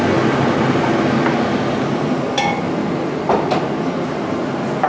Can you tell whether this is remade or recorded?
recorded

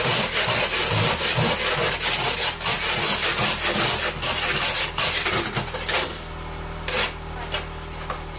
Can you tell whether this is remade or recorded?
recorded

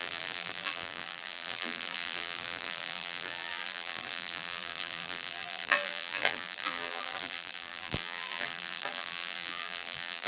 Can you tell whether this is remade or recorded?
remade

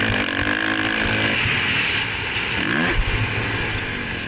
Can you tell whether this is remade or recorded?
recorded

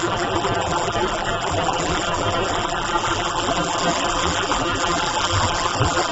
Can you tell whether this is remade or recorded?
remade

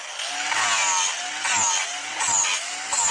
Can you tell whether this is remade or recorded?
recorded